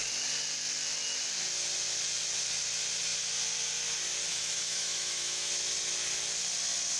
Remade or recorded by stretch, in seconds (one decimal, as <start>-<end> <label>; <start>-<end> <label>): 0.0-4.3 recorded; 4.3-5.5 remade; 5.5-7.0 recorded